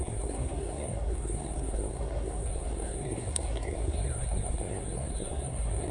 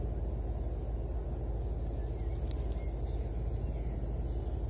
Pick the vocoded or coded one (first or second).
first